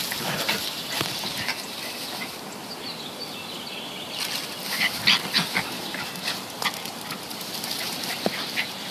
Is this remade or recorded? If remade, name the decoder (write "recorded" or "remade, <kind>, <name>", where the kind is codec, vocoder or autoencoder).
recorded